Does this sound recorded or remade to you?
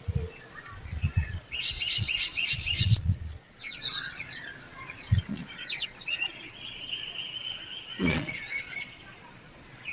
remade